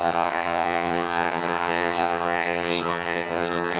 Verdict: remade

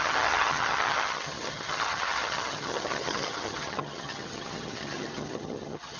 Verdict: remade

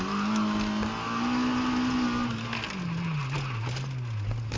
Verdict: recorded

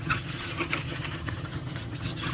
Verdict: remade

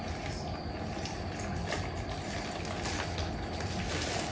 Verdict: recorded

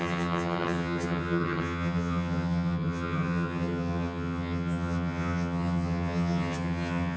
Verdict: remade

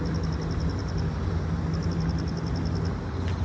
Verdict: recorded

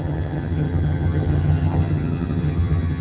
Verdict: remade